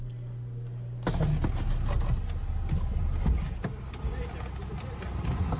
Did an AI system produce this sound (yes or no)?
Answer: no